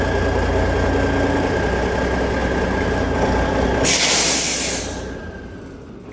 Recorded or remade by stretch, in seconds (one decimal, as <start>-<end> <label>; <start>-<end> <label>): 0.0-6.1 recorded